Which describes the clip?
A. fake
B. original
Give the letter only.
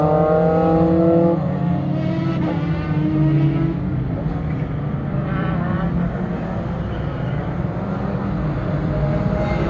B